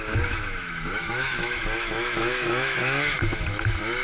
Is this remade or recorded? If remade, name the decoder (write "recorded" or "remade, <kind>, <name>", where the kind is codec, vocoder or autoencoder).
remade, autoencoder, DAC-VAE